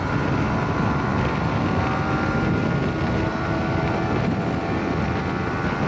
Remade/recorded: recorded